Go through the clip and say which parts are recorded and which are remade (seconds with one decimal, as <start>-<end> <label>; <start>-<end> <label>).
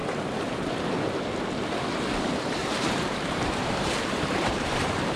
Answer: 0.0-2.6 recorded; 2.6-4.8 remade; 4.8-5.2 recorded